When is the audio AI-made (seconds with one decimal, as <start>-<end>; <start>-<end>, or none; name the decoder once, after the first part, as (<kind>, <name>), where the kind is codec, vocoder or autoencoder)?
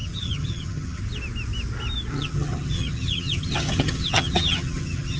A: 0.0-1.0 (vocoder, HiFi-GAN); 2.1-5.2